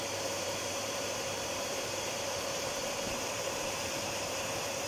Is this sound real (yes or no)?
no